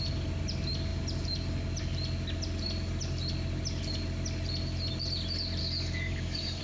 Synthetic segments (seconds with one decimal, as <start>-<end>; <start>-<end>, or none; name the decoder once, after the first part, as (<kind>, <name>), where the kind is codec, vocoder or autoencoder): 5.6-6.6 (codec, DAC)